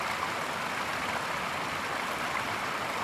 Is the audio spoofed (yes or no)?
no